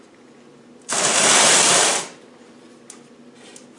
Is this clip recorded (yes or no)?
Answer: yes